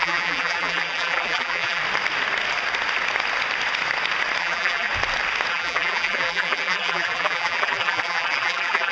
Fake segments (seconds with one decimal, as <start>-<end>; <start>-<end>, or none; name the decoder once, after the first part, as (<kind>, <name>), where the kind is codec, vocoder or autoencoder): 0.0-1.8 (vocoder, BigVGAN v2); 4.4-4.9; 5.5-8.9